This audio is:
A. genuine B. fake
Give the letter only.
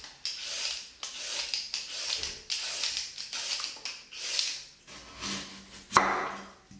A